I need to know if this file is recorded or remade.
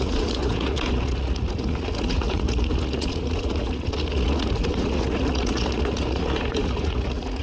remade